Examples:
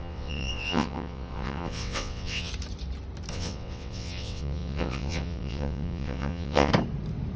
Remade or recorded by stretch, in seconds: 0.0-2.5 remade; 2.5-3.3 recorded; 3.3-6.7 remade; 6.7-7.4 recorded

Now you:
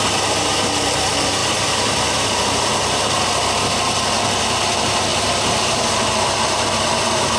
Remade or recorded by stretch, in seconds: 0.0-1.4 recorded; 1.4-3.3 remade; 3.3-5.1 recorded; 5.1-6.0 remade; 6.0-7.4 recorded

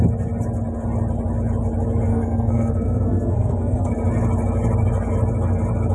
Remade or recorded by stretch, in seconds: 0.0-2.1 recorded; 2.1-3.9 remade; 3.9-5.9 recorded

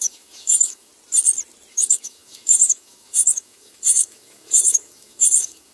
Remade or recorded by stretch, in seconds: 0.0-0.9 remade; 0.9-1.7 recorded; 1.7-5.7 remade

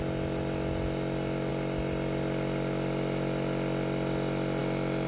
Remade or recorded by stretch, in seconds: 0.0-5.1 recorded

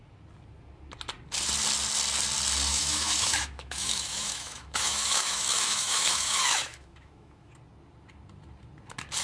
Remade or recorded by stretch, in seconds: 0.0-2.7 recorded; 2.7-7.5 remade; 7.5-9.2 recorded

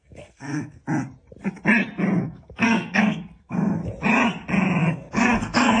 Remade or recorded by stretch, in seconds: 0.0-0.8 remade; 0.8-2.2 recorded; 2.2-3.8 remade; 3.8-4.8 recorded; 4.8-5.8 remade

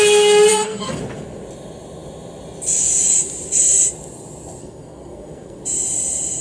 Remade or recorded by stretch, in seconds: 0.0-0.5 recorded; 0.5-1.0 remade; 1.0-4.6 recorded; 4.6-5.6 remade; 5.6-6.4 recorded